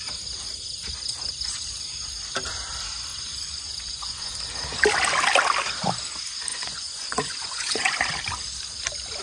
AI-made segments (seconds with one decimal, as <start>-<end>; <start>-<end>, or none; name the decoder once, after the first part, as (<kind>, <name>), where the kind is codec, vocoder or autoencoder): 3.1-4.3 (vocoder, Vocos); 6.5-8.0